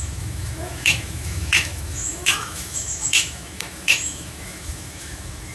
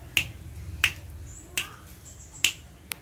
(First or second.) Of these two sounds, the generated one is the first